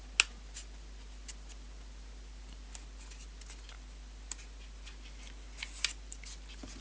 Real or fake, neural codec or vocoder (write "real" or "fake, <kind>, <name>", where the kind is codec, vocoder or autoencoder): real